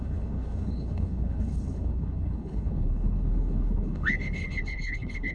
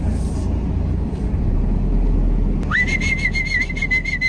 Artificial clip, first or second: first